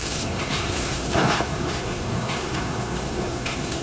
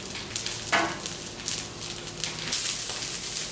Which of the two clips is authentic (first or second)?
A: second